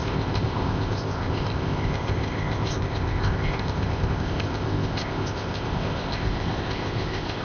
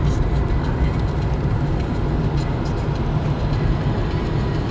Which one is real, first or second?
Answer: second